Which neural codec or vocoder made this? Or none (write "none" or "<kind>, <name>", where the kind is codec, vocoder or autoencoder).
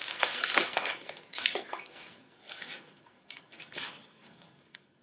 codec, SNAC